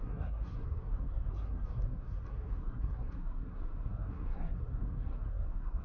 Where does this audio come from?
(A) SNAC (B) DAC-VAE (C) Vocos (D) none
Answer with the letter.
A